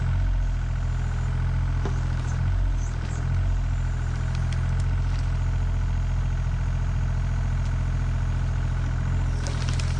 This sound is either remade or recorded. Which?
recorded